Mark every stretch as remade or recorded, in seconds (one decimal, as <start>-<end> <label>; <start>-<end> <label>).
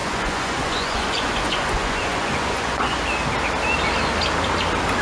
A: 0.0-3.0 remade; 3.0-5.0 recorded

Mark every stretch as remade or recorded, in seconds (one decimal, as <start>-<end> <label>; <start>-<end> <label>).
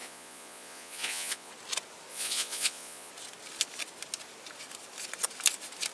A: 0.0-1.5 remade; 1.5-2.1 recorded; 2.1-3.1 remade; 3.1-5.9 recorded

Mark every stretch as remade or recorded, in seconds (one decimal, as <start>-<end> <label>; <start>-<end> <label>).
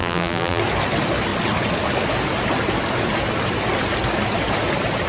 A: 0.0-0.6 remade; 0.6-5.1 recorded